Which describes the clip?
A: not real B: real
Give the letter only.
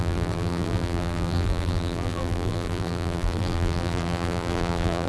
A